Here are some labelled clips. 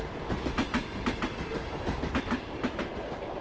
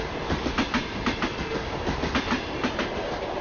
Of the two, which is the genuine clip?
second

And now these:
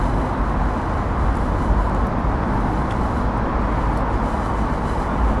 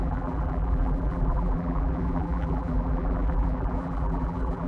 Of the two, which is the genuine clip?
first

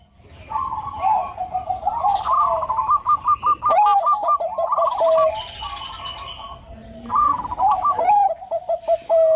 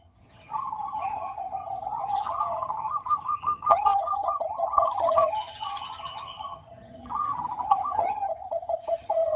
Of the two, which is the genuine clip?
first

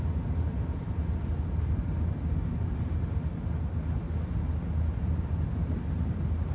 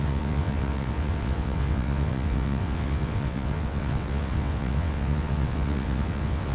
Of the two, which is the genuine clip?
first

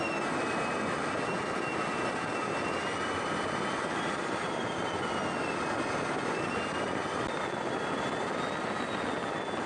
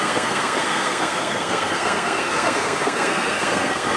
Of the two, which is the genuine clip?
first